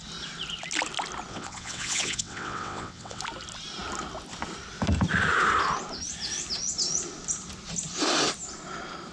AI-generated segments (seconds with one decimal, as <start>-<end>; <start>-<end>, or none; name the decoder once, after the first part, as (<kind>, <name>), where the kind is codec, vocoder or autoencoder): 1.3-3.2 (vocoder, WaveNeXt)